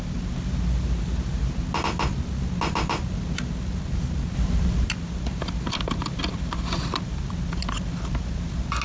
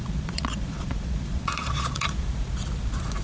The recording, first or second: first